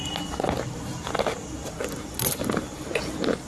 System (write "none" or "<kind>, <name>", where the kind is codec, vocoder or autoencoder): none